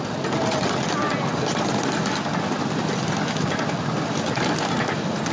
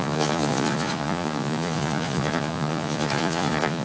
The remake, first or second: second